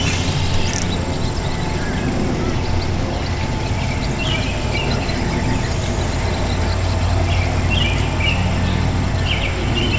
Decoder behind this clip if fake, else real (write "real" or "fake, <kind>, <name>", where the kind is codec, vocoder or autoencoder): real